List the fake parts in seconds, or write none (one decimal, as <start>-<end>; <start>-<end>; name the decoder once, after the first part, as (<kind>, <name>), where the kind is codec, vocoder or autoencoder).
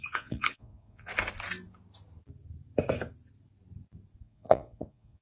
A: 0.0-1.1 (vocoder, Vocos); 4.2-5.2